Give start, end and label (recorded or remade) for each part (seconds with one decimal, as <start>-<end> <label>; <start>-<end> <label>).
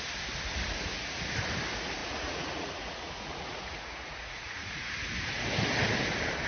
0.0-2.0 recorded; 2.0-4.9 remade; 4.9-6.5 recorded